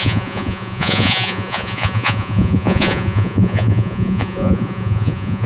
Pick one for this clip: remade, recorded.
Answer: remade